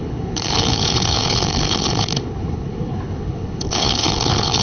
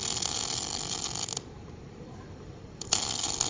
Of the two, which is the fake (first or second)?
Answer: first